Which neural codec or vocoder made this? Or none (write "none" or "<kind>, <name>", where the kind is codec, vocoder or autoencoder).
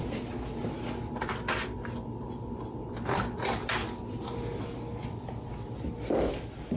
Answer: none